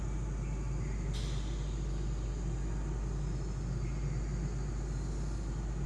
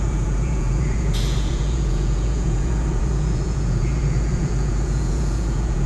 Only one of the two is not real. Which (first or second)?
second